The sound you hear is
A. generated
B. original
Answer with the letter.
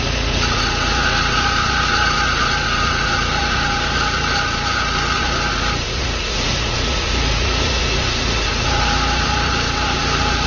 A